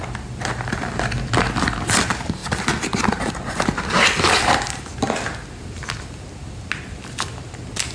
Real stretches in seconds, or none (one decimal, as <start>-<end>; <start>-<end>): 0.0-7.9